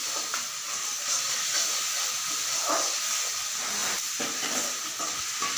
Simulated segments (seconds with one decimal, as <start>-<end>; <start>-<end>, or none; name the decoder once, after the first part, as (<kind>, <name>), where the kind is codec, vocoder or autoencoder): 3.8-5.0 (vocoder, BigVGAN v2)